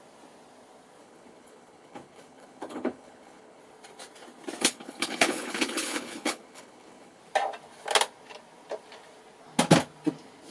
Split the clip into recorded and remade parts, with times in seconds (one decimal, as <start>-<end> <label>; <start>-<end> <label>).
0.0-1.0 recorded; 1.0-3.6 remade; 3.6-4.6 recorded; 4.6-7.2 remade; 7.2-10.5 recorded